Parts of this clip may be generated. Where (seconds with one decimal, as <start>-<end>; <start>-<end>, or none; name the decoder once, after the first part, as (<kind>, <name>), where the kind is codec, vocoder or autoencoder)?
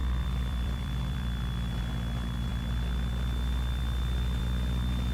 0.0-1.8 (vocoder, BigVGAN v2)